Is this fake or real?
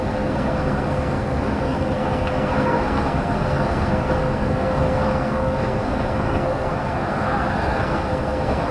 fake